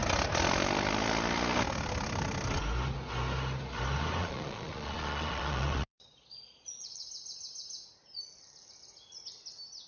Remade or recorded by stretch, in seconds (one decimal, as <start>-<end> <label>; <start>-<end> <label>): 0.0-4.2 recorded; 4.2-7.0 remade; 7.0-9.9 recorded